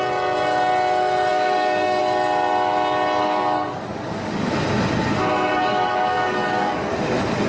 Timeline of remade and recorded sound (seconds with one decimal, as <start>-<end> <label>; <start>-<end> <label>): 0.0-1.3 recorded; 1.3-2.0 remade; 2.0-3.2 recorded; 3.2-4.5 remade; 4.5-5.5 recorded; 5.5-6.9 remade; 6.9-7.5 recorded